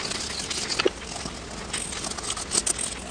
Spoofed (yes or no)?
no